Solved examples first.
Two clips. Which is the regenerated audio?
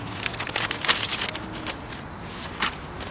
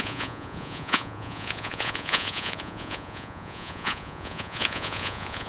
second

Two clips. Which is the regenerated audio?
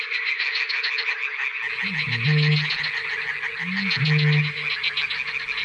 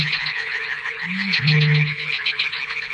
second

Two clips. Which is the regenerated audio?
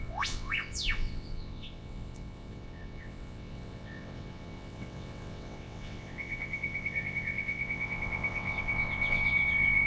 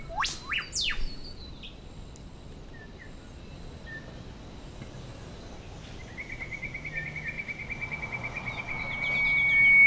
first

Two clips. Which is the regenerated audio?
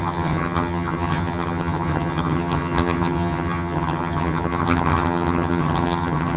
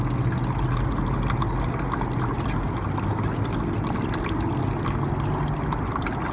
first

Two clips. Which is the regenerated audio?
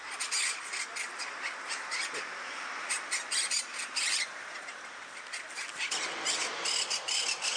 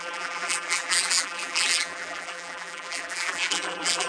second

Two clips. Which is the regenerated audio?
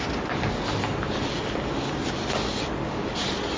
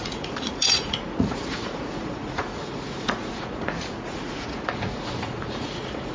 second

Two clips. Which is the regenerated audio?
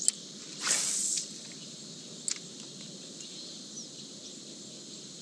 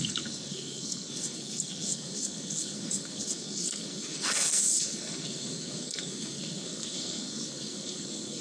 second